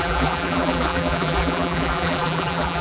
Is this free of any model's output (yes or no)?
no